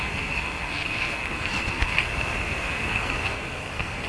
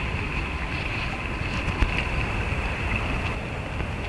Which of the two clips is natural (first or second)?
second